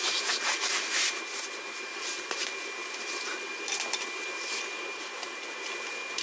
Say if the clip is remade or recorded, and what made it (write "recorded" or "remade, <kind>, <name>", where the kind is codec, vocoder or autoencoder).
remade, vocoder, BigVGAN v2